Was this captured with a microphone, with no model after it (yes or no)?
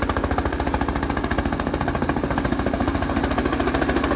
yes